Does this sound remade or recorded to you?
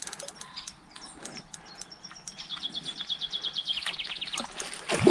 recorded